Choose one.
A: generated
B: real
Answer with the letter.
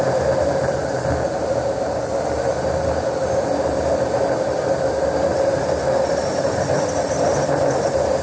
B